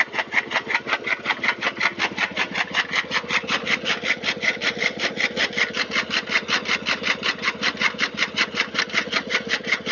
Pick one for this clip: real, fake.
real